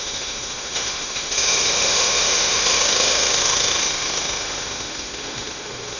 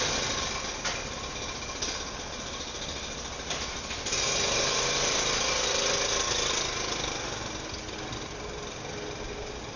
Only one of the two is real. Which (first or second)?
second